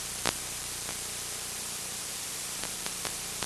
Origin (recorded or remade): remade